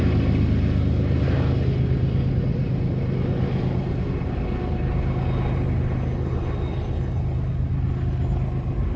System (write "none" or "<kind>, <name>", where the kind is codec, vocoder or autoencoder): none